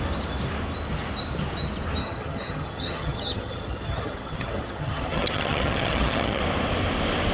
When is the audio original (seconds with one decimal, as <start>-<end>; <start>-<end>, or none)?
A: 0.0-2.0; 6.4-7.3